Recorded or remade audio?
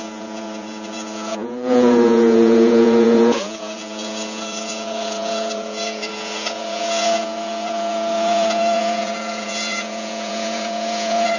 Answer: remade